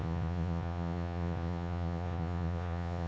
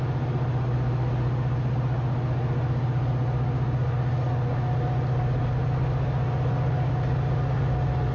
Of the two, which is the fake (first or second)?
first